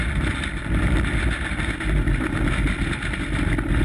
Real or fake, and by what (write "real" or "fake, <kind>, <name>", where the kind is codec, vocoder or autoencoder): real